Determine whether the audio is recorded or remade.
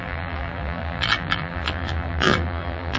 remade